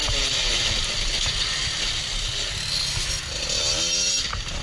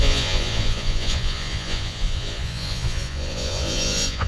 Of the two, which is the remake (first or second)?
second